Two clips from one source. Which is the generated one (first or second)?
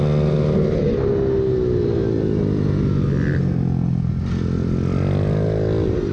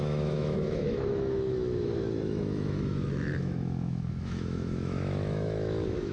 second